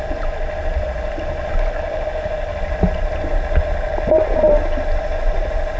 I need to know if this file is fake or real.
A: real